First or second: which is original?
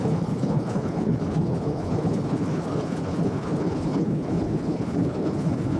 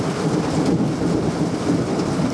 second